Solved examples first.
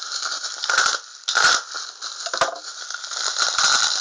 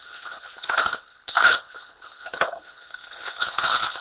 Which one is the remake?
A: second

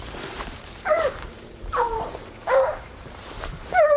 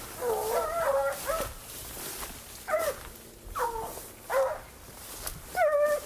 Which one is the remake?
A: first